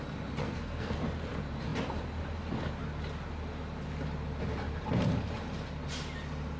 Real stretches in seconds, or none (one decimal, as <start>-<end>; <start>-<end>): 0.0-0.4; 1.0-6.6